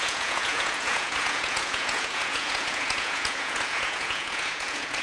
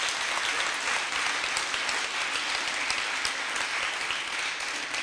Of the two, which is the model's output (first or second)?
first